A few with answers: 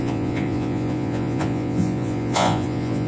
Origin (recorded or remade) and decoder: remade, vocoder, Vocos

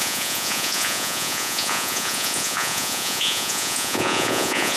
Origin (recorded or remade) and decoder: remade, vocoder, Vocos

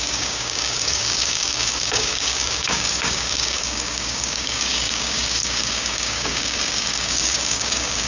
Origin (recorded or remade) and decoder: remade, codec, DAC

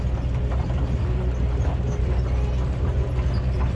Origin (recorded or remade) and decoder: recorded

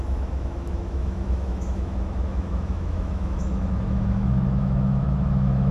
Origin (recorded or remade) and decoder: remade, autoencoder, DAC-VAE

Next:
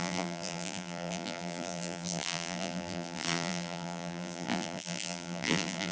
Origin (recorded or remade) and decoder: remade, vocoder, BigVGAN v2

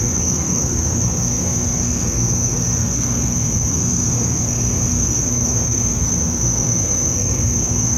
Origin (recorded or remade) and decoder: remade, codec, SNAC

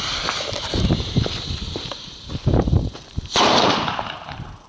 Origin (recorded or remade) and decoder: remade, vocoder, BigVGAN v2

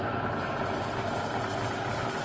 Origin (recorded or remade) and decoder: recorded